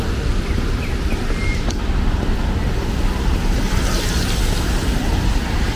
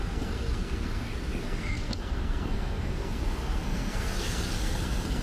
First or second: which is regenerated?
second